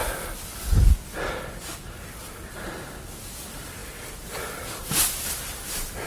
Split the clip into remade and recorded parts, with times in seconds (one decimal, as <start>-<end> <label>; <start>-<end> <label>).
0.0-6.1 recorded

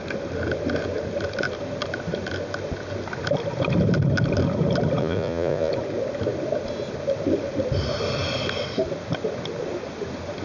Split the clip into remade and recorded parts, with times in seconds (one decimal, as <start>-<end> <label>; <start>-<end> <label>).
0.0-5.0 recorded; 5.0-5.7 remade; 5.7-10.4 recorded

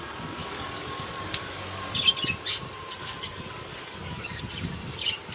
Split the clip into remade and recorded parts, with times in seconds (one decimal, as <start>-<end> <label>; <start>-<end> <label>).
0.0-0.4 recorded; 0.4-1.6 remade; 1.6-3.0 recorded; 3.0-4.4 remade; 4.4-5.3 recorded

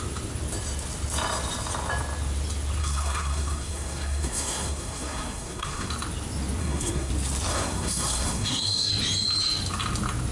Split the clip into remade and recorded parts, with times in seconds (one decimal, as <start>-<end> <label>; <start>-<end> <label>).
0.0-2.8 recorded; 2.8-5.9 remade; 5.9-6.6 recorded; 6.6-7.1 remade; 7.1-7.5 recorded; 7.5-8.9 remade; 8.9-10.3 recorded

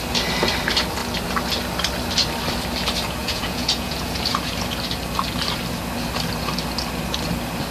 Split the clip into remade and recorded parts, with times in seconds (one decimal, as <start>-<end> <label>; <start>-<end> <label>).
0.0-3.2 recorded; 3.2-4.5 remade; 4.5-7.7 recorded

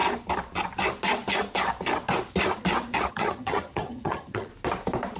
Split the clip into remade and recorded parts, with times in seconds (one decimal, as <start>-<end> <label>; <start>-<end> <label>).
0.0-3.1 recorded; 3.1-4.5 remade; 4.5-5.2 recorded

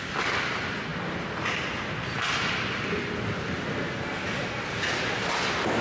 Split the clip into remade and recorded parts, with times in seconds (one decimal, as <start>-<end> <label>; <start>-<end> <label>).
0.0-5.8 recorded

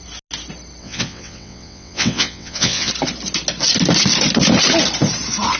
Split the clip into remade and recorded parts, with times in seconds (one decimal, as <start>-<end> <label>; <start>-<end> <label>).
0.0-0.8 recorded; 0.8-2.9 remade; 2.9-5.6 recorded